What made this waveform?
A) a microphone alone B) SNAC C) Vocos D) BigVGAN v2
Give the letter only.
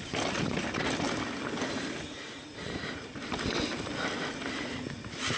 A